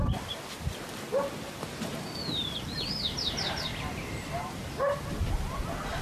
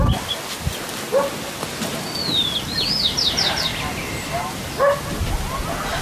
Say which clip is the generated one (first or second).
first